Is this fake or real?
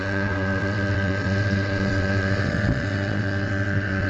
fake